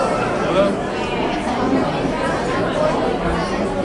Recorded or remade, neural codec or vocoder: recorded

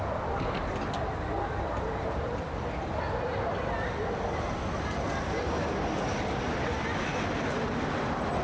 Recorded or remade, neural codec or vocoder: recorded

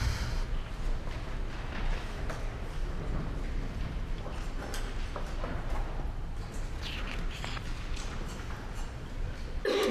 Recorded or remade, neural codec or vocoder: recorded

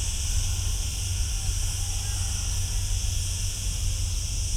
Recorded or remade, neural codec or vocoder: recorded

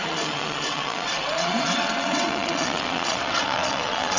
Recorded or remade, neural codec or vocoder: remade, vocoder, WaveNeXt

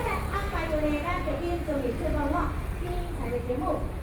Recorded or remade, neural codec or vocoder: recorded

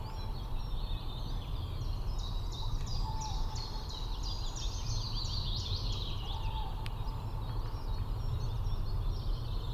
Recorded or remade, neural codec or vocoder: recorded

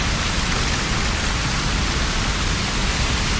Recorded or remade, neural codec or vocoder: recorded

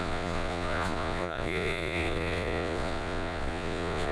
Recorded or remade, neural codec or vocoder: remade, vocoder, Vocos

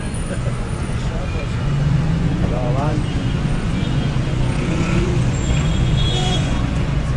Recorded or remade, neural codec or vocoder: remade, vocoder, Vocos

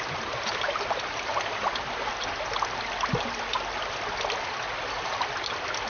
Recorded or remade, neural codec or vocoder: recorded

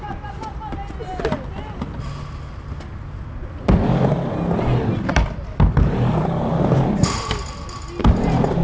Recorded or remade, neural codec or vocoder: recorded